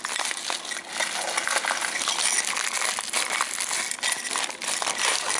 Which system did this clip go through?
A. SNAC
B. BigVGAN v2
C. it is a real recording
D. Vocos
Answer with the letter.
C